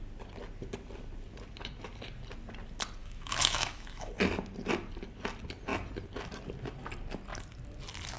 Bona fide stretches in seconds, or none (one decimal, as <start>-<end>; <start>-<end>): 0.0-3.0; 4.1-8.2